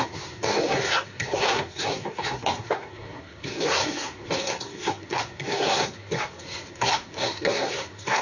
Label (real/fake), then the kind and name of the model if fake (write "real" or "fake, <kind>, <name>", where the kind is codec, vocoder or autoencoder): fake, codec, SNAC